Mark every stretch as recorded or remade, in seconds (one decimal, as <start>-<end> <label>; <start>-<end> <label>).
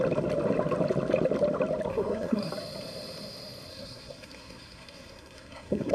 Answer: 0.0-1.9 recorded; 1.9-2.5 remade; 2.5-3.7 recorded; 3.7-5.9 remade